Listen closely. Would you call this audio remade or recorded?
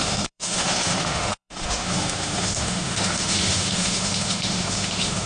remade